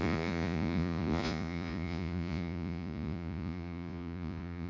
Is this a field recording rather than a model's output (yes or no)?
no